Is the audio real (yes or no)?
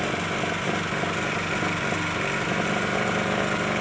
yes